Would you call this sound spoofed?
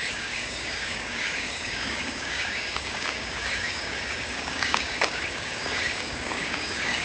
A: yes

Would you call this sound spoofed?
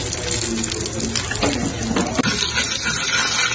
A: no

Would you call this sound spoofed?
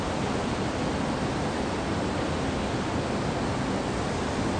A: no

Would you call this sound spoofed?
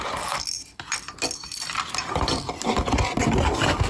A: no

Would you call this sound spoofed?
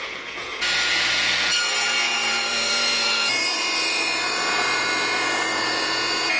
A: yes